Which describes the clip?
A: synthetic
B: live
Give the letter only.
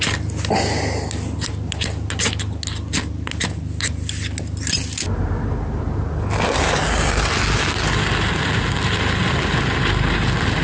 B